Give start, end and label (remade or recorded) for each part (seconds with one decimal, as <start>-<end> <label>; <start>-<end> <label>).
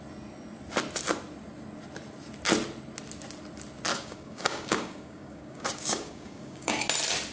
0.0-3.9 recorded; 3.9-6.7 remade; 6.7-7.3 recorded